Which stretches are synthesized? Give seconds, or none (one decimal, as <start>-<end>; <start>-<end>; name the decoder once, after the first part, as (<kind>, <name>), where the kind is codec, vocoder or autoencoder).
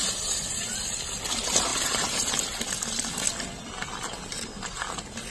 none